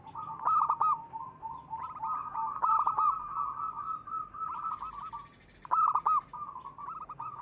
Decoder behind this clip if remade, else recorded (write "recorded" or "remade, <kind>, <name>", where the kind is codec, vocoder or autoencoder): recorded